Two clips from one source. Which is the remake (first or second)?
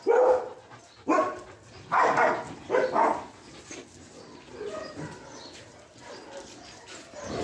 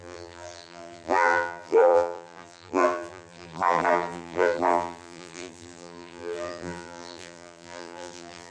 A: second